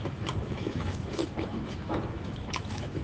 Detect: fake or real fake